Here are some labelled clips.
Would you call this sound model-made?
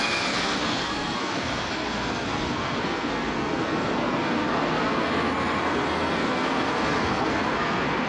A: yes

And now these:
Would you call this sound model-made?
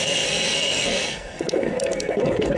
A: yes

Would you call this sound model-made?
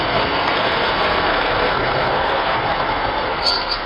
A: yes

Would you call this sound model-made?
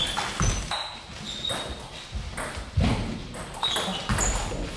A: no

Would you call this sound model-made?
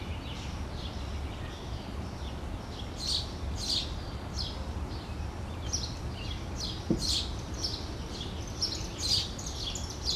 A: no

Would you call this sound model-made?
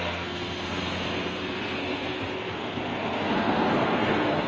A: yes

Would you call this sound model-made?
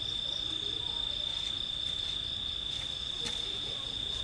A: no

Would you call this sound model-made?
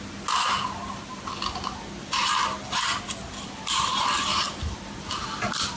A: no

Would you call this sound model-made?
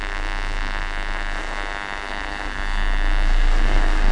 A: yes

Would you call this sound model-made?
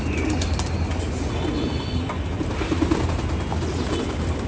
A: no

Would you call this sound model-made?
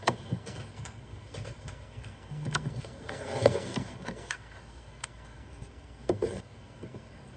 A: yes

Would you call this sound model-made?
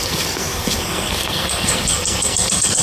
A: yes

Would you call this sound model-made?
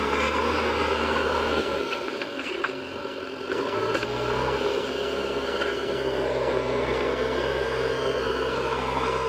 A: yes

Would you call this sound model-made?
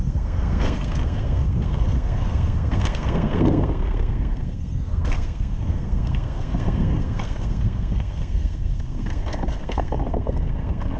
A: yes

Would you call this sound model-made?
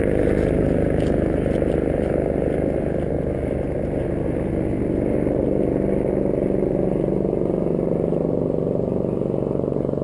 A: no